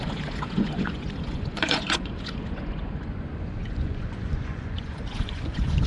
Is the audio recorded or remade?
remade